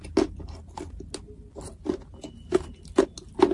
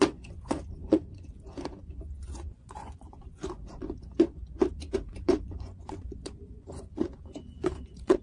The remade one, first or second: second